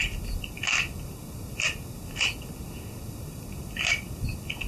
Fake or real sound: real